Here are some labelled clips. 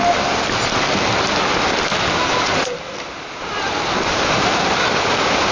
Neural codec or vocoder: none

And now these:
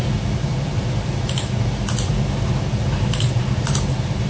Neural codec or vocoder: none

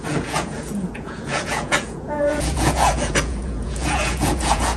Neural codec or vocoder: vocoder, Vocos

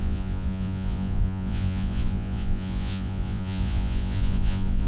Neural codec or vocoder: vocoder, Vocos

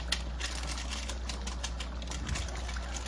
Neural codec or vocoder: none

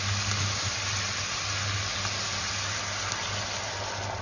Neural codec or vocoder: none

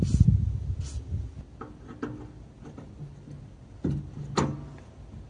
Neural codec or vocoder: none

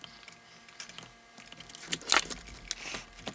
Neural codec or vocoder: none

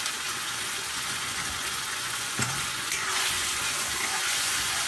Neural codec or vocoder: vocoder, Vocos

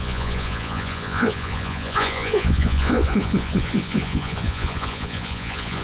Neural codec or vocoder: vocoder, Vocos